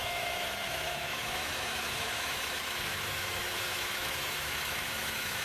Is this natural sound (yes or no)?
no